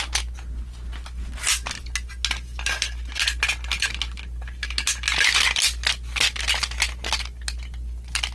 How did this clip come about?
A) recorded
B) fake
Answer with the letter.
A